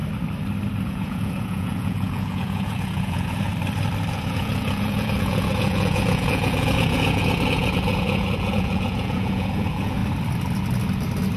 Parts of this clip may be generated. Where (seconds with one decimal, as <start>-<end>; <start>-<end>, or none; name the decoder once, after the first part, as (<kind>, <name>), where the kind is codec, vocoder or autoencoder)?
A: 0.9-3.5 (vocoder, Vocos); 4.1-10.0